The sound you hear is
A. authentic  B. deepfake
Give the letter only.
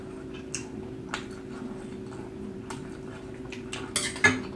A